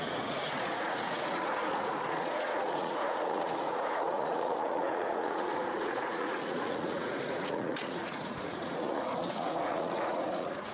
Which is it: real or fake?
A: fake